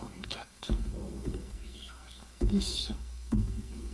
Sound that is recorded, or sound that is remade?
remade